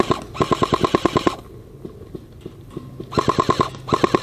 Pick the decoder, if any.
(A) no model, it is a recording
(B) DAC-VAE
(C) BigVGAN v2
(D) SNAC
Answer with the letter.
A